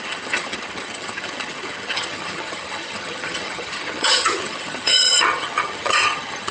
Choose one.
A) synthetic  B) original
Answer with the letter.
A